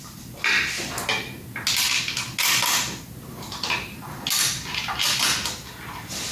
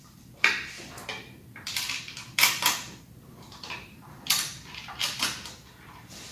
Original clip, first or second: first